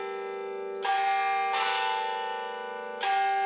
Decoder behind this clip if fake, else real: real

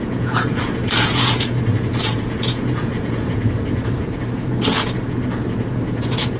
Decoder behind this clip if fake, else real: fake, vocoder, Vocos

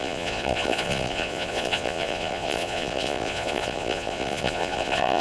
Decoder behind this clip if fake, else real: fake, vocoder, Vocos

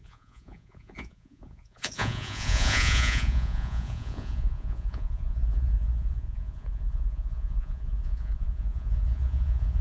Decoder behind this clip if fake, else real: fake, vocoder, Vocos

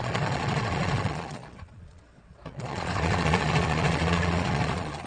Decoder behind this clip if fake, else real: fake, vocoder, Vocos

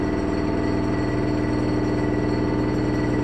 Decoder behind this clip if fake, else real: real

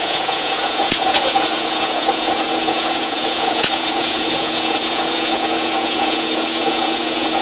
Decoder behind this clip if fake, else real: fake, vocoder, Vocos